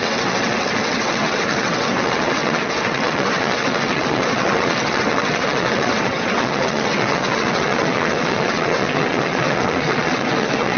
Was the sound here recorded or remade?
remade